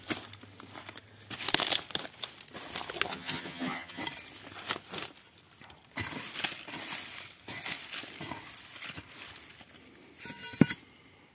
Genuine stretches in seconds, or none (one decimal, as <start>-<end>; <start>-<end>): 0.0-3.1; 4.0-11.3